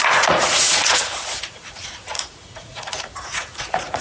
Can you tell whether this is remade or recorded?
remade